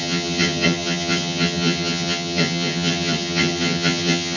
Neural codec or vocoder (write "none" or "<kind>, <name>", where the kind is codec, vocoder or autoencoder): vocoder, HiFi-GAN